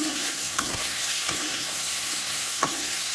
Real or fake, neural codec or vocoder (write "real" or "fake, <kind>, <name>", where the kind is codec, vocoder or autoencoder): fake, codec, SNAC